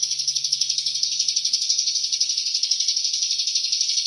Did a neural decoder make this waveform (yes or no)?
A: yes